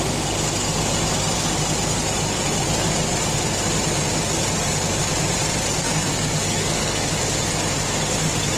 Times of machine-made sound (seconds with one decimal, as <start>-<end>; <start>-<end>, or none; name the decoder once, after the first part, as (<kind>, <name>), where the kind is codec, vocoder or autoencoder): 5.8-7.1 (codec, SNAC)